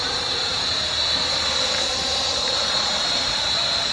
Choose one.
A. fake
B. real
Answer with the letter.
A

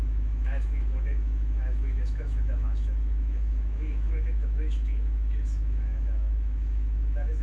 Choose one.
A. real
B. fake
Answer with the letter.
B